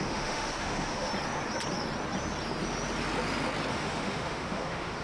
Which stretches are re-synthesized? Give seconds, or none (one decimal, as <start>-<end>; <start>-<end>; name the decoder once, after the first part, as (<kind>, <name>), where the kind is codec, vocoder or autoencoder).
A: 0.0-1.1 (autoencoder, DAC-VAE); 3.7-5.0